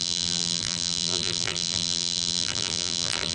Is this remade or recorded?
remade